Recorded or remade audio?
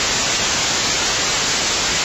recorded